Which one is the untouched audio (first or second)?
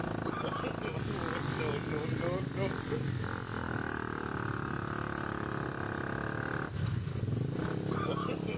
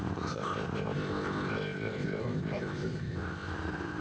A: first